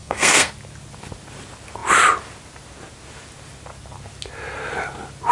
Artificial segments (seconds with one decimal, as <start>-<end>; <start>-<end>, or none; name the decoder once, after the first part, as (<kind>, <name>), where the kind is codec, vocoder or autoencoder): 0.0-0.5 (codec, SNAC)